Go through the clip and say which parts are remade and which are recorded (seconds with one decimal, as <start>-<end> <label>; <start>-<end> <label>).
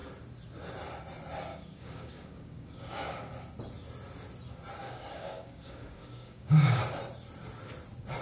0.0-1.5 recorded; 1.5-3.3 remade; 3.3-4.8 recorded; 4.8-6.8 remade; 6.8-8.2 recorded